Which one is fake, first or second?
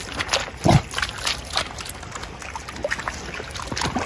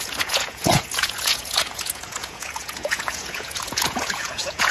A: second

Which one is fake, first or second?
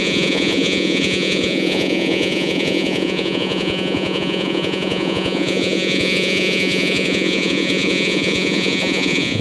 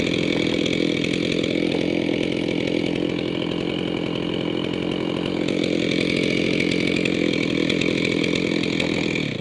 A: first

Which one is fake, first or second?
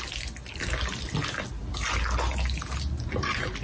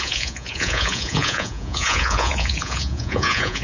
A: second